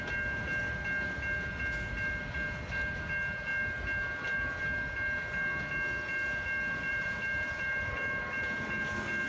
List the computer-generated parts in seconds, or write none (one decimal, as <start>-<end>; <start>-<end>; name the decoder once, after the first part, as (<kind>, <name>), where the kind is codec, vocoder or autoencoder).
6.9-8.2 (vocoder, BigVGAN v2)